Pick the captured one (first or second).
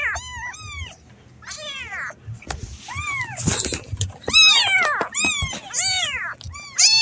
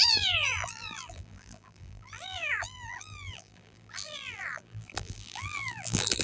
first